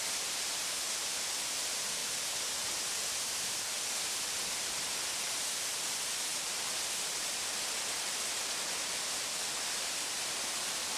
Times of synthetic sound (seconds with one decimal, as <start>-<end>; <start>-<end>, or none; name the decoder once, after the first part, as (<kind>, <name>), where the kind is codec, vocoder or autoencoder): none

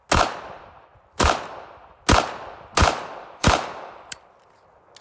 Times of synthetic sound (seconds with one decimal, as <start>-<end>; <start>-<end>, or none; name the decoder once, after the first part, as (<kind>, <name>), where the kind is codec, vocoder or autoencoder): 0.9-1.4 (vocoder, BigVGAN v2); 2.8-4.2

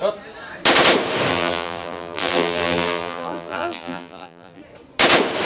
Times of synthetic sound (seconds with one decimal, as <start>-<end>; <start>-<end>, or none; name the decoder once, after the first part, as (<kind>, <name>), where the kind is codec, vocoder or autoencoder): 1.3-4.6 (vocoder, BigVGAN v2)

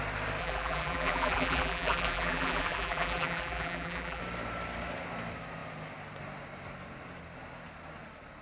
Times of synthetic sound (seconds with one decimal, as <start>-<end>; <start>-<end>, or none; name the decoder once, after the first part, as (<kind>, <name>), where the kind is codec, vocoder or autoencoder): 0.4-4.2 (vocoder, BigVGAN v2)

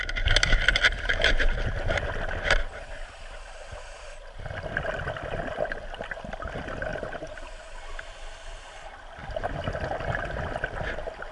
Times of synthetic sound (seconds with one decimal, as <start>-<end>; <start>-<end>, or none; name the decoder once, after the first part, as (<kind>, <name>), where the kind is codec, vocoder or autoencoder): 6.9-7.5 (vocoder, BigVGAN v2); 9.2-10.8

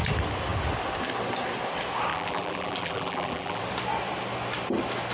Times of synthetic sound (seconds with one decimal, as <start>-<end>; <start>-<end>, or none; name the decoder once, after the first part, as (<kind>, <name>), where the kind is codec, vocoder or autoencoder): 2.1-3.6 (vocoder, BigVGAN v2)

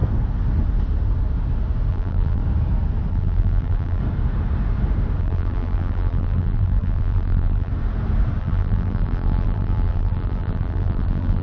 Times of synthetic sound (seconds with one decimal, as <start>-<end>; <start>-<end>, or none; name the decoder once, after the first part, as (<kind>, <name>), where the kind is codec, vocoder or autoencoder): 1.9-2.4 (vocoder, BigVGAN v2); 3.1-4.0; 5.2-7.7; 8.4-11.4

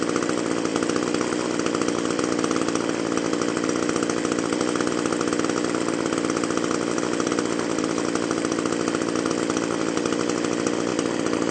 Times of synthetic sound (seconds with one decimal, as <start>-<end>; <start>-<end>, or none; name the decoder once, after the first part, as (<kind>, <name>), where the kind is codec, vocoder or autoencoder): 10.9-11.5 (vocoder, BigVGAN v2)